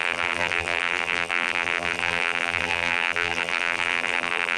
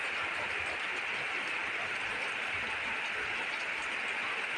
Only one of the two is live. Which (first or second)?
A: second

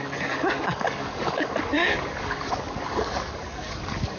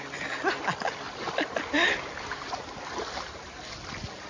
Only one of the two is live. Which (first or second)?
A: second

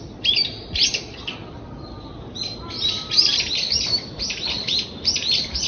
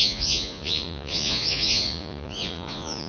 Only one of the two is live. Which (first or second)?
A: first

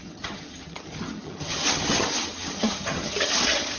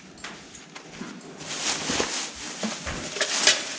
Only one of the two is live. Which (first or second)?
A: second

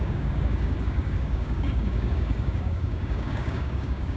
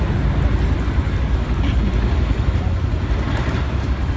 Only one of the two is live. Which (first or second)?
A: second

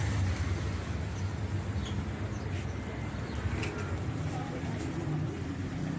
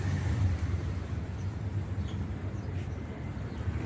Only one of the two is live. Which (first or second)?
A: first